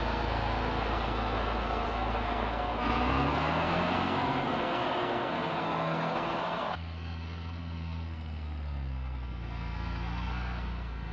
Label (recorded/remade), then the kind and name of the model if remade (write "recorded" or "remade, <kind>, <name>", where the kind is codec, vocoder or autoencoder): remade, codec, SNAC